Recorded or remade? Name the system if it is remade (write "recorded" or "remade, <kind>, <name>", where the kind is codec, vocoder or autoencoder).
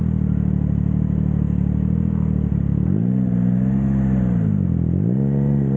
recorded